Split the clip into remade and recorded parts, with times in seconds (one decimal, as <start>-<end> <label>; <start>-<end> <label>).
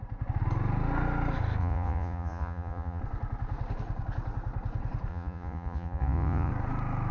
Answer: 0.0-1.6 recorded; 1.6-3.0 remade; 3.0-5.1 recorded; 5.1-6.5 remade; 6.5-7.1 recorded